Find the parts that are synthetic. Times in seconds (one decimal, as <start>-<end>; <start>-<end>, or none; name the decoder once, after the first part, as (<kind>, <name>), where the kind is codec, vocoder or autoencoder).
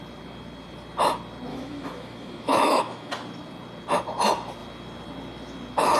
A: 1.5-3.1 (autoencoder, DAC-VAE)